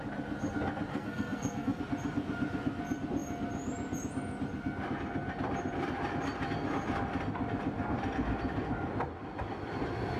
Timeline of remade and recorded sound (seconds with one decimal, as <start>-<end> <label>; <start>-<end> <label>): 0.0-0.9 recorded; 0.9-1.8 remade; 1.8-10.2 recorded